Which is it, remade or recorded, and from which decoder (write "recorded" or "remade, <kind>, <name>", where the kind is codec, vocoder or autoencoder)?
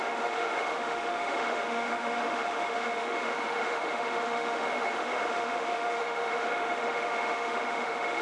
remade, autoencoder, DAC-VAE